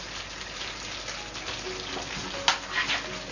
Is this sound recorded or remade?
recorded